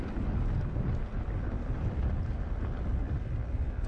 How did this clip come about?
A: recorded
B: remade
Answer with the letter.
A